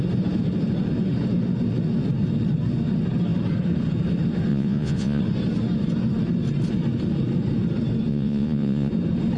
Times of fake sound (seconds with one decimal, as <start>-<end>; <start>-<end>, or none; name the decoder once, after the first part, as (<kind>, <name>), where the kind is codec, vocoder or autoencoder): 4.5-5.2 (vocoder, Vocos); 8.1-8.9